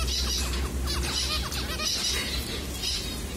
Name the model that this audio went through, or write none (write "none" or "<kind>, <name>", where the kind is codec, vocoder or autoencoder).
none